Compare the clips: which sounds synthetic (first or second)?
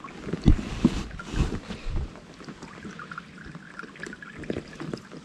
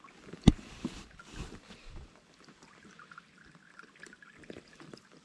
second